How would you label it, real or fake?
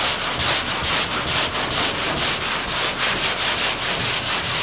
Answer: real